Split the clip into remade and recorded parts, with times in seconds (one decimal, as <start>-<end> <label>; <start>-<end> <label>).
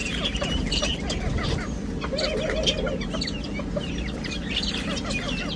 0.0-1.0 remade; 1.0-5.6 recorded